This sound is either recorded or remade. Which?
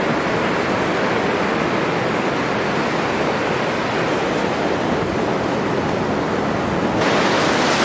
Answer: recorded